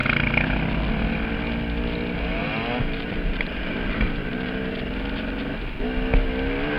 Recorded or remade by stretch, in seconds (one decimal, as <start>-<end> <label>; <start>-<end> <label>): 0.0-2.8 recorded; 2.8-4.6 remade; 4.6-6.8 recorded